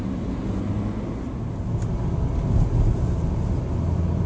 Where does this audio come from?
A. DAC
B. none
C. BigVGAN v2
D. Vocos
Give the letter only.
B